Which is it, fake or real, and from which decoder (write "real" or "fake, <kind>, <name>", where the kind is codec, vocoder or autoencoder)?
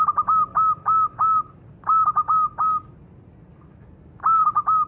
real